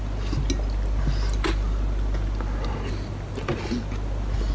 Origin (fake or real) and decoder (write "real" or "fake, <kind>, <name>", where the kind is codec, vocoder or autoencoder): real